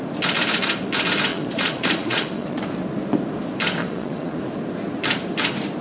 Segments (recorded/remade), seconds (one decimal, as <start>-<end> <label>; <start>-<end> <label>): 0.0-1.3 recorded; 1.3-2.6 remade; 2.6-3.8 recorded; 3.8-4.4 remade; 4.4-5.8 recorded